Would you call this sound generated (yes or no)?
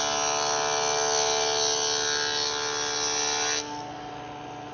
no